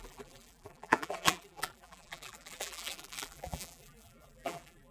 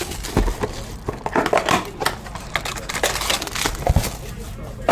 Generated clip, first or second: first